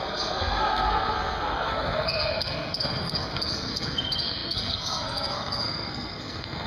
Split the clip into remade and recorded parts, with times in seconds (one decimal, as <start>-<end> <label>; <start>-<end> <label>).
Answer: 0.0-6.7 remade